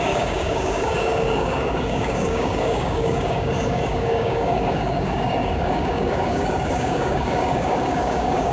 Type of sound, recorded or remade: remade